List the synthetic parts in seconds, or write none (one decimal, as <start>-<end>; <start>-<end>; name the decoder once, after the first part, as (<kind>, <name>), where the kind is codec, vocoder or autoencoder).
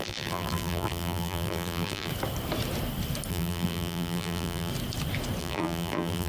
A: 0.0-2.1 (vocoder, BigVGAN v2); 3.3-4.7; 5.4-6.3